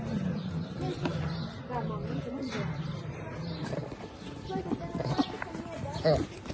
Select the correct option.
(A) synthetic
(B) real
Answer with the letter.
B